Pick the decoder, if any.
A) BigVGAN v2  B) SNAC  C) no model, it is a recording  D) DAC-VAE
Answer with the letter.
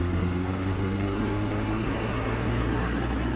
B